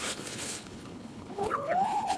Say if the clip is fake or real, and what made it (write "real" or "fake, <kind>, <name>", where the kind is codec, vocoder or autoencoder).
fake, codec, HILCodec